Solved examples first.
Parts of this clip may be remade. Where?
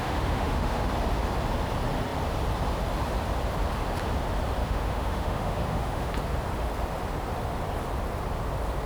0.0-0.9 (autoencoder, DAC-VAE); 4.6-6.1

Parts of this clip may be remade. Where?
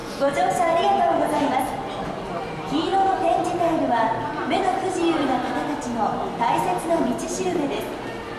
0.0-1.6 (vocoder, Vocos)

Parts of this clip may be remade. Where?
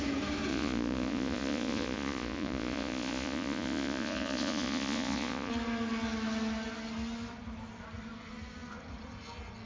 0.5-5.5 (vocoder, Vocos)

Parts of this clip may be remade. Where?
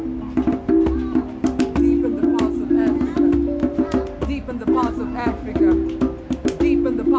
none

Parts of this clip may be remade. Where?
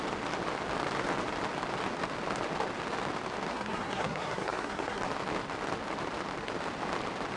3.5-5.0 (codec, SNAC)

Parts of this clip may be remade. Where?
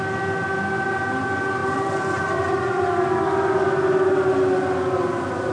1.6-2.3 (vocoder, BigVGAN v2)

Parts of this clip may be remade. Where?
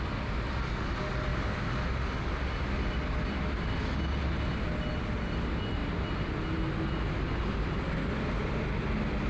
none